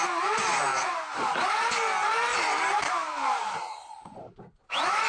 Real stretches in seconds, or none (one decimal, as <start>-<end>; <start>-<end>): 0.0-0.7; 1.7-2.3; 4.3-5.1